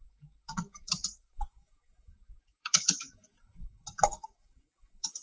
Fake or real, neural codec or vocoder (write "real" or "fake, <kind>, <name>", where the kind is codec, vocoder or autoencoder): fake, codec, DAC